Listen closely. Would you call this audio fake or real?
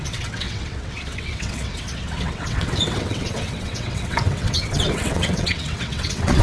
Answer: fake